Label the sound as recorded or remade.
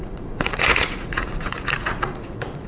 remade